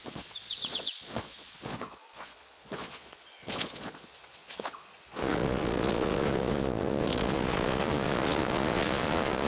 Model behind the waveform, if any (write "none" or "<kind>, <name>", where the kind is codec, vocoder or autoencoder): vocoder, Vocos